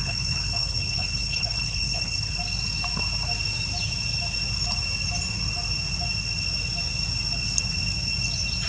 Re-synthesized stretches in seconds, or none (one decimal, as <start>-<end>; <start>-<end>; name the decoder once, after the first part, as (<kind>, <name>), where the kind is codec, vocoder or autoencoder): 0.0-2.3 (codec, HILCodec)